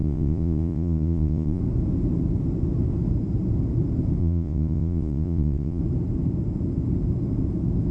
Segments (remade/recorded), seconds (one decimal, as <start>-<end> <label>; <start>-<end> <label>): 0.0-1.6 remade; 1.6-4.2 recorded; 4.2-5.8 remade; 5.8-7.9 recorded